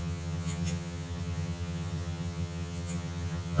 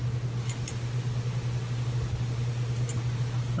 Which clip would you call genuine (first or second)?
second